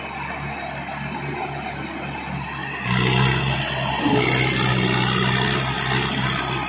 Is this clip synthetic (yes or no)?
no